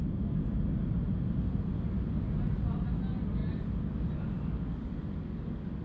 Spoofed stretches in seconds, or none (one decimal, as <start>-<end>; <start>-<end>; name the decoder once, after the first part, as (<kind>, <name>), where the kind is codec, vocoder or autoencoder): none